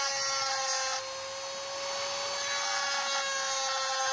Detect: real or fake real